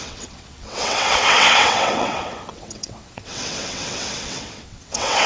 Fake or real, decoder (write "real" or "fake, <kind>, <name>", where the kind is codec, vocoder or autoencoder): fake, vocoder, WaveNeXt